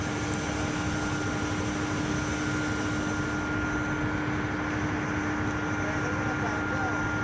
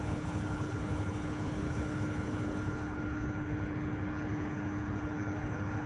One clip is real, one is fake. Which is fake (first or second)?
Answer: second